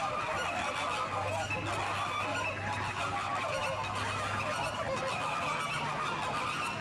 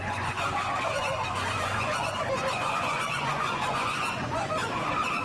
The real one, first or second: first